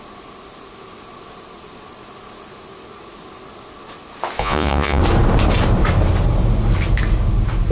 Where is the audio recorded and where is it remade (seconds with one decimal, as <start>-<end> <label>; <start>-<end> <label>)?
0.0-4.4 recorded; 4.4-5.0 remade; 5.0-7.7 recorded